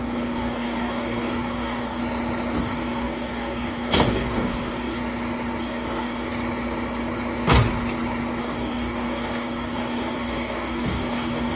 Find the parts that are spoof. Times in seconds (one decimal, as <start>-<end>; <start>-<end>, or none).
0.0-2.0; 2.6-5.0; 5.6-6.3; 8.4-11.6